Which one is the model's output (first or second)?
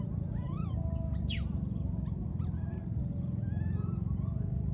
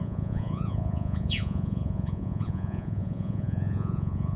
second